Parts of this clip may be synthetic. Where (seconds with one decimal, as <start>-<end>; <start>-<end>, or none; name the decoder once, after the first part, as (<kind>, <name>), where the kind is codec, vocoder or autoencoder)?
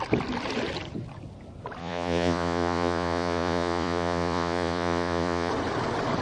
1.8-5.5 (vocoder, Vocos)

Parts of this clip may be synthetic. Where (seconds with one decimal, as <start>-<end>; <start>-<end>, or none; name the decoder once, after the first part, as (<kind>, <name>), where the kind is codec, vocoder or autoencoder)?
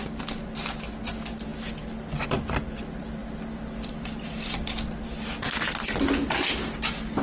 none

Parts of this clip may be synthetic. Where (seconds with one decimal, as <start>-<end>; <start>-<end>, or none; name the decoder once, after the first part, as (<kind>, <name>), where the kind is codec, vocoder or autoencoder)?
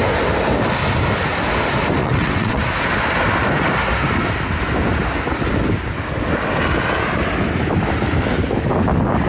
2.0-2.6 (vocoder, WaveNeXt)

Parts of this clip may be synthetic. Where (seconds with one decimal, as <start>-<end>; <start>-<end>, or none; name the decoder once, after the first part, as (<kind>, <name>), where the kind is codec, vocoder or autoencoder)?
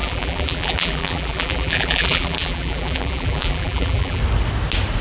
0.0-4.2 (vocoder, BigVGAN v2)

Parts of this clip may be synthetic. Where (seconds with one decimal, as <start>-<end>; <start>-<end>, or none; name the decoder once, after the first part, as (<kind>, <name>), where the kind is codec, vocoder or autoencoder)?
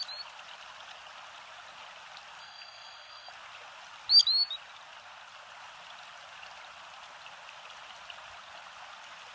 2.4-3.3 (codec, SNAC)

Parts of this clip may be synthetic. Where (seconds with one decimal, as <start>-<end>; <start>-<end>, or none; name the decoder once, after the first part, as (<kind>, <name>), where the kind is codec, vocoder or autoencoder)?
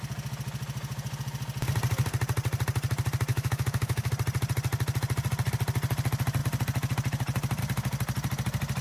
3.3-4.1 (autoencoder, DAC-VAE)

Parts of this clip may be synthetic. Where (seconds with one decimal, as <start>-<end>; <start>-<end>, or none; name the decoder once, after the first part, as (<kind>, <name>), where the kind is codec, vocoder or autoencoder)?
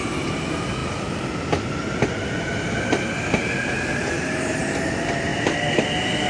5.3-6.3 (vocoder, BigVGAN v2)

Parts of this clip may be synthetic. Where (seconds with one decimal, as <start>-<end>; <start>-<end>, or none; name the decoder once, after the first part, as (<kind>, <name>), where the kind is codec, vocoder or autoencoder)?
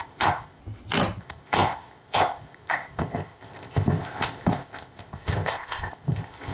0.0-0.6 (codec, ZipCodec); 1.2-6.5